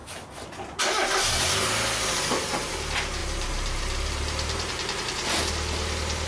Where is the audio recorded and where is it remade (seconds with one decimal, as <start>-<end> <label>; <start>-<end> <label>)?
0.0-3.2 recorded; 3.2-5.4 remade; 5.4-6.3 recorded